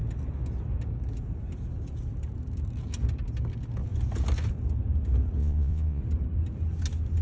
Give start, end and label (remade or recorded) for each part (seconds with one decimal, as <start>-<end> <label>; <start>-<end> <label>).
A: 0.0-5.4 recorded; 5.4-6.0 remade; 6.0-7.2 recorded